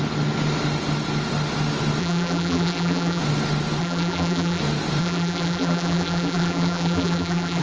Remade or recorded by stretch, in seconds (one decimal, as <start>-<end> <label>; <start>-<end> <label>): 0.0-2.0 recorded; 2.0-3.2 remade; 3.2-3.8 recorded; 3.8-4.6 remade; 4.6-5.0 recorded; 5.0-7.6 remade